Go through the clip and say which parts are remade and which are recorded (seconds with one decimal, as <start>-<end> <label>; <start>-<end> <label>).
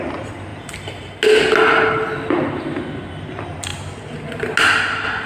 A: 0.0-5.3 recorded